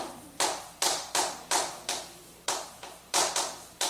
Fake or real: fake